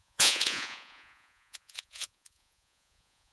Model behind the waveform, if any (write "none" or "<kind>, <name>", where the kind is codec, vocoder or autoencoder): vocoder, Vocos